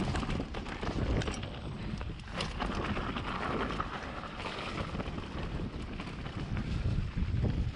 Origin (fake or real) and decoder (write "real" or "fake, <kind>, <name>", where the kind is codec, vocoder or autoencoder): real